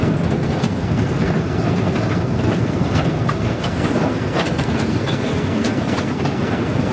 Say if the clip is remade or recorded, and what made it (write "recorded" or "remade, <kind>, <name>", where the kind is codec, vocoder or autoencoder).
remade, codec, SNAC